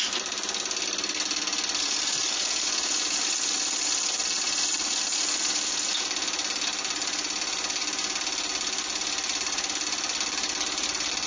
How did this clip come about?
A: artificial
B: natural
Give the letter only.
B